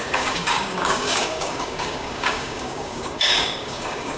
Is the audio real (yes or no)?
no